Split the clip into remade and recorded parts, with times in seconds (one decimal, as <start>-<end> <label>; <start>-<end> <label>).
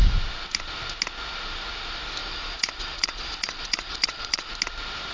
0.0-2.2 recorded; 2.2-4.5 remade; 4.5-5.1 recorded